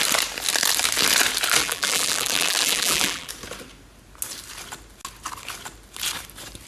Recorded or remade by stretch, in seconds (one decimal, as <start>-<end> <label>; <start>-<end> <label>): 0.0-1.6 recorded; 1.6-3.3 remade; 3.3-6.7 recorded